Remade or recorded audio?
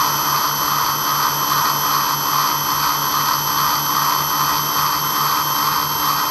recorded